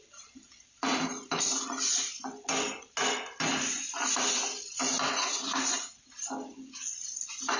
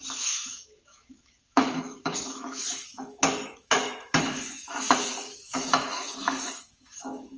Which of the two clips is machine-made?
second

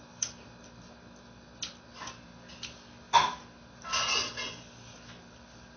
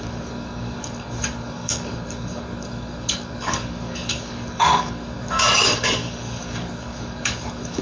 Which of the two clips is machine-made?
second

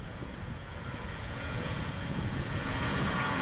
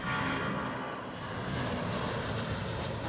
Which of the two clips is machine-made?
first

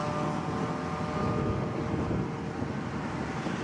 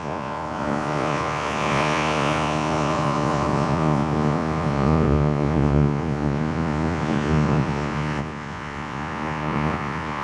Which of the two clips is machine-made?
second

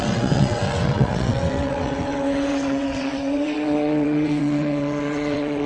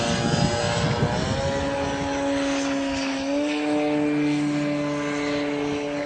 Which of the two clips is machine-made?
first